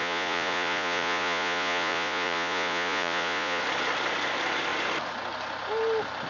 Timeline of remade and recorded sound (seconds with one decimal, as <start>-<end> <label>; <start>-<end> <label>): 0.0-3.6 remade; 3.6-6.3 recorded